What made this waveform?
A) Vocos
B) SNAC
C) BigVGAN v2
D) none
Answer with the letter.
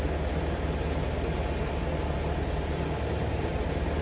D